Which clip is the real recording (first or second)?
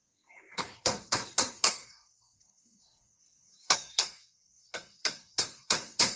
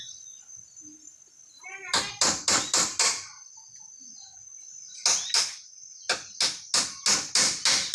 second